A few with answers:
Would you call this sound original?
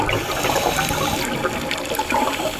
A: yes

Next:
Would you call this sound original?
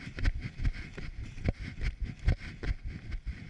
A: yes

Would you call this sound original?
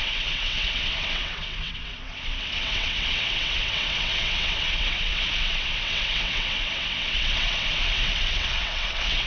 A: no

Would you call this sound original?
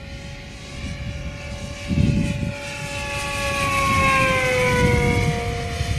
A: yes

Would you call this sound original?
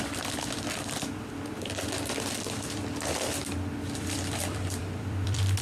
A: no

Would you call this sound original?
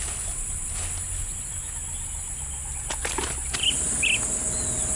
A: yes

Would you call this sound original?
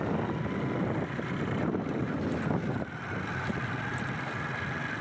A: yes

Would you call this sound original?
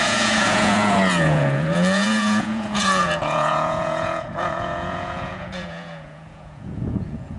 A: no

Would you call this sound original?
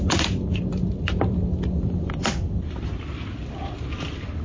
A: no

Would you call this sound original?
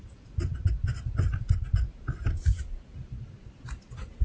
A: yes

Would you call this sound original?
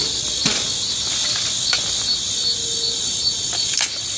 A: yes